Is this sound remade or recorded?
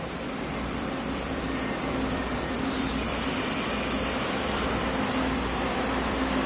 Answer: remade